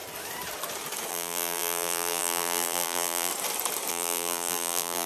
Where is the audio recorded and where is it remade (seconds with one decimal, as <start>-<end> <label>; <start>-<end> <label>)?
0.0-1.1 recorded; 1.1-3.3 remade; 3.3-3.9 recorded; 3.9-5.1 remade